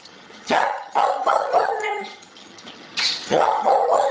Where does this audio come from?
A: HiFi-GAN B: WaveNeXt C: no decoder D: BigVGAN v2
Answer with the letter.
A